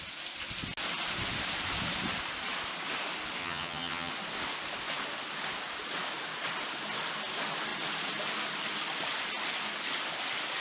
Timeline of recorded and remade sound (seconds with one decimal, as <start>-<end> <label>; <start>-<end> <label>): 0.0-3.4 recorded; 3.4-4.1 remade; 4.1-10.6 recorded